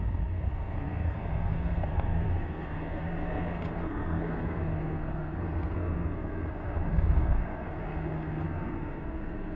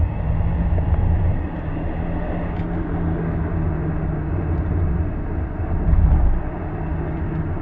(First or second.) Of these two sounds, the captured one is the second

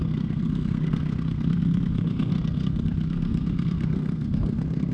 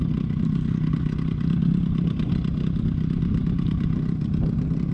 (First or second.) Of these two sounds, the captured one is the second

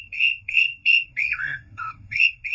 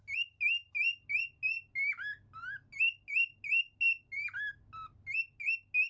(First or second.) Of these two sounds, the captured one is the second